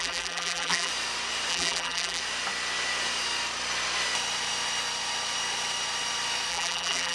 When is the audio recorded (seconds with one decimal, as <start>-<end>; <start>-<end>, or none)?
0.9-1.5; 2.2-6.5